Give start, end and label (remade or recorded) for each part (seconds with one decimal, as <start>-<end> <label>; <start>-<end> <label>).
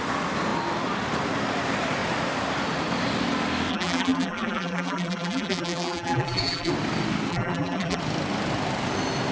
0.0-3.7 recorded; 3.7-6.7 remade; 6.7-7.3 recorded; 7.3-8.0 remade; 8.0-9.3 recorded